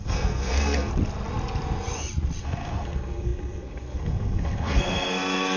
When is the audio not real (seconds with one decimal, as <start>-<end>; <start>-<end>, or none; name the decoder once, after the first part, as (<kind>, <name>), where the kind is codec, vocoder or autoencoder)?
0.0-0.9 (codec, SNAC); 2.4-5.6